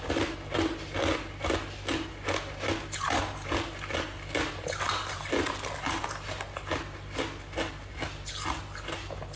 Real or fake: real